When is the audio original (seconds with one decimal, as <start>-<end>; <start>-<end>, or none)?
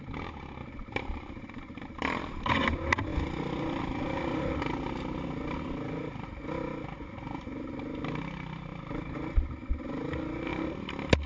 0.0-0.6; 2.5-11.3